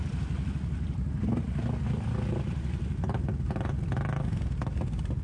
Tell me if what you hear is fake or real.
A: real